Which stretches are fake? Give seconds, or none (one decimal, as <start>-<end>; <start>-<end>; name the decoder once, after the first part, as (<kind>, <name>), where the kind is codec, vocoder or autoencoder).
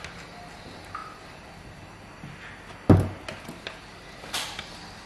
none